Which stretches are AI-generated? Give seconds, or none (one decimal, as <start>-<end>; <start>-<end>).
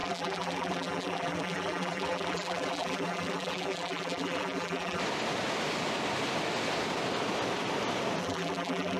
0.0-5.0; 8.2-9.0